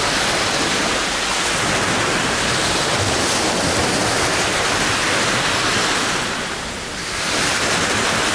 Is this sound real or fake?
real